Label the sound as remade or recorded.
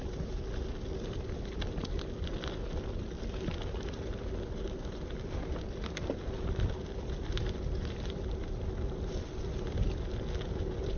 recorded